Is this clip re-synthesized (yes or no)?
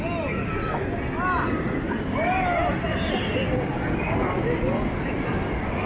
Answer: no